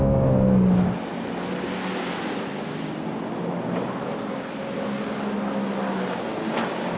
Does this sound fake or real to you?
real